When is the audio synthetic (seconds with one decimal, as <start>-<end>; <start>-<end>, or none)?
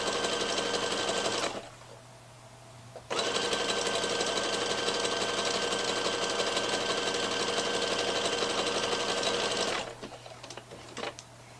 none